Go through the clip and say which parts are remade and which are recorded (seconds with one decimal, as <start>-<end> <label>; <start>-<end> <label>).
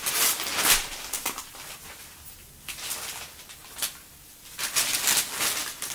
0.0-0.5 recorded; 0.5-2.9 remade; 2.9-5.9 recorded